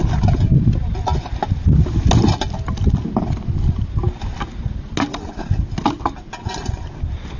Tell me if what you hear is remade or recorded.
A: recorded